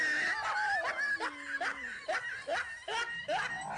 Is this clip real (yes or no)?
yes